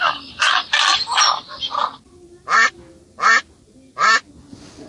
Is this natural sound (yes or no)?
yes